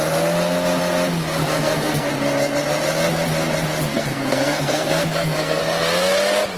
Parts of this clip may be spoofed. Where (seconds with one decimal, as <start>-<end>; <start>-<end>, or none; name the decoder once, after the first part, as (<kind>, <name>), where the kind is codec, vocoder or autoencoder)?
1.4-2.1 (codec, SNAC); 3.9-5.6